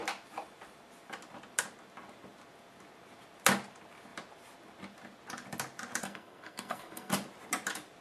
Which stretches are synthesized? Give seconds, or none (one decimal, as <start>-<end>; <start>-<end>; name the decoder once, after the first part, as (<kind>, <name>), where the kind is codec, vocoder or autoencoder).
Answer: 6.0-7.1 (codec, SNAC)